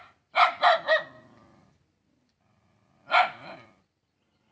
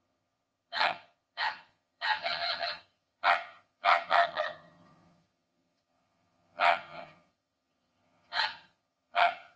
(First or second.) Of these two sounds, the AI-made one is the second